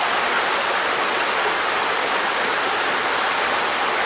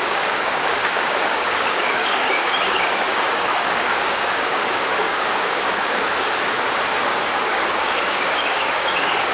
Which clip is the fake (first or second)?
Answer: second